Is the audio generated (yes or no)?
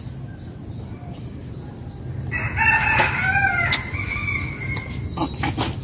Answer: no